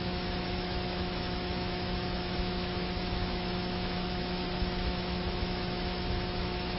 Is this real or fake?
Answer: fake